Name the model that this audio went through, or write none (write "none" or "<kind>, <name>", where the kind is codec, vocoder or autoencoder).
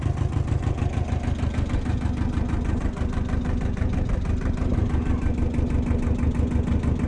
none